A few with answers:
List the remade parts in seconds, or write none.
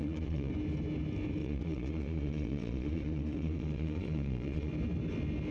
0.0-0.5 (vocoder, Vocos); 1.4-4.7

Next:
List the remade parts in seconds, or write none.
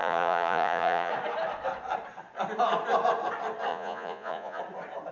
0.0-1.1 (vocoder, Vocos); 3.7-4.6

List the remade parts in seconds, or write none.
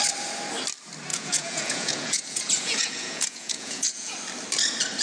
1.1-4.1 (vocoder, Vocos)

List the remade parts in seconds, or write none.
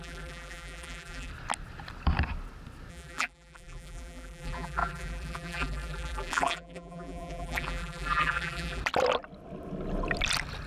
0.0-1.3 (vocoder, BigVGAN v2); 2.9-8.8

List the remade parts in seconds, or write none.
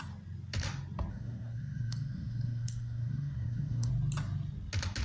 1.1-3.9 (codec, SNAC)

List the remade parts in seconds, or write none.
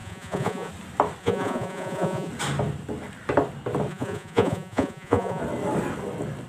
0.0-0.7 (vocoder, Vocos); 1.2-2.3; 3.9-5.4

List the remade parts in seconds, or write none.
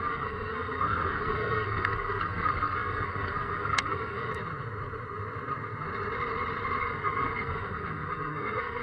0.0-4.3 (codec, SNAC); 6.8-8.8